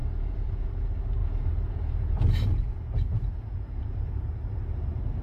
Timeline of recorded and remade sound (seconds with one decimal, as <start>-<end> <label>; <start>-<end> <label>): 0.0-0.7 remade; 0.7-1.2 recorded; 1.2-4.3 remade; 4.3-5.2 recorded